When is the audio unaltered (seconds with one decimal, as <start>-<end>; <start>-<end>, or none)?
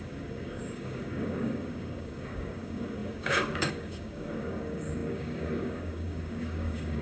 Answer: none